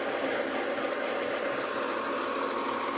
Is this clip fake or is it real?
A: real